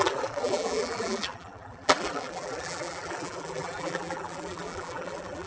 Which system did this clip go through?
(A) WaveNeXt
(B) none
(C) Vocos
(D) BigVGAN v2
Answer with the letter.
D